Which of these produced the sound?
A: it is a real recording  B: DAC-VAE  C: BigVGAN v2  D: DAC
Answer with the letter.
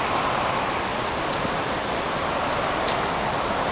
A